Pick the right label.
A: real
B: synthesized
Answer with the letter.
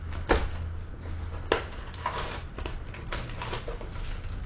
A